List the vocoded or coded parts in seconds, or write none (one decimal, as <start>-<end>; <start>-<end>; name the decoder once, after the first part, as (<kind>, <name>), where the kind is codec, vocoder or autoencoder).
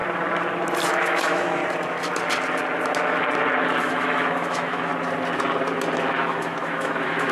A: 0.9-1.6 (autoencoder, DAC-VAE); 3.8-4.9; 6.1-7.3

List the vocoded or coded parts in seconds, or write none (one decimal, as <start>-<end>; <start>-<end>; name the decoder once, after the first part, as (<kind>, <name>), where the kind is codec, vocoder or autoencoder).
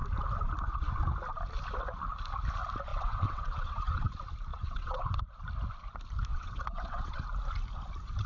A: 2.9-4.1 (vocoder, WaveNeXt); 4.5-5.2; 6.3-7.2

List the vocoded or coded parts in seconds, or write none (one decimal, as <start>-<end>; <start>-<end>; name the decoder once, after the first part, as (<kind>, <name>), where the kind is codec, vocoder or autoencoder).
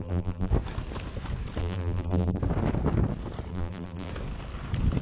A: 0.0-0.5 (vocoder, BigVGAN v2); 1.6-2.4; 3.5-4.1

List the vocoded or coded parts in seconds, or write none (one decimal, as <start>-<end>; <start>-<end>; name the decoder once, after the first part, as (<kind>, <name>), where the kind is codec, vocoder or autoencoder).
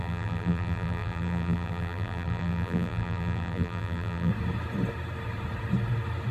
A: 0.0-4.3 (vocoder, BigVGAN v2)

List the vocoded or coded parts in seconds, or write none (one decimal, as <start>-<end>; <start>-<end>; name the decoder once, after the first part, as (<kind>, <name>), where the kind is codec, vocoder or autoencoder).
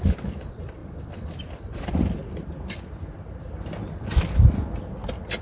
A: none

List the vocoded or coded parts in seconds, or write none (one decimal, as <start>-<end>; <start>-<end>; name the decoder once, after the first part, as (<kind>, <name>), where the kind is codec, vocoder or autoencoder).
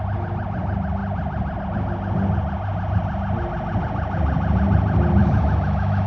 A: 5.2-6.1 (autoencoder, DAC-VAE)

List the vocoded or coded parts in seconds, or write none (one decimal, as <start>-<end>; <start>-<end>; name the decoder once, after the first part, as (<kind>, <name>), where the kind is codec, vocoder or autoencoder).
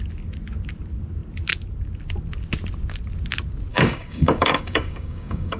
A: 3.7-5.6 (codec, DAC)